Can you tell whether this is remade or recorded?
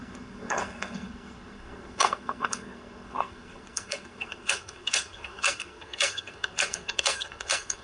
remade